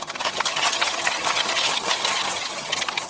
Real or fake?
fake